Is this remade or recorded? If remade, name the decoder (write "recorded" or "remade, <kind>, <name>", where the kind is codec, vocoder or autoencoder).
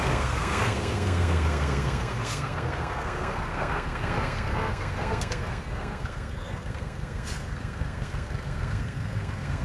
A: remade, codec, SNAC